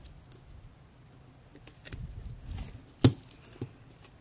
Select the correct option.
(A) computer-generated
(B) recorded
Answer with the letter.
B